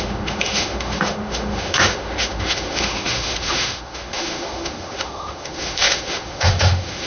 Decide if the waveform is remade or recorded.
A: remade